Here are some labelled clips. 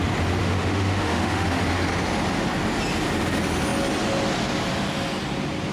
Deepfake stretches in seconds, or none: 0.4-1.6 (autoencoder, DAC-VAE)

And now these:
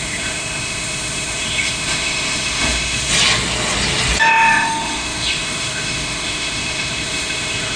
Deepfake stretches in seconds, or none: 0.0-3.1 (autoencoder, DAC-VAE); 4.2-7.8